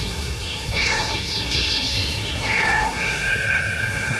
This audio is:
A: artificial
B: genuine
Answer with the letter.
A